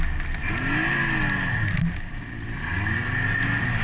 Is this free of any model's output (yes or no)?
yes